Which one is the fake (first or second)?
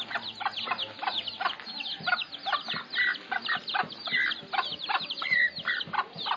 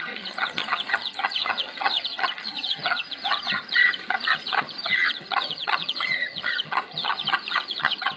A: second